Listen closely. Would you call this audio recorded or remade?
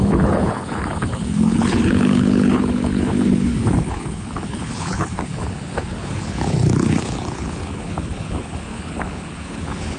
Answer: remade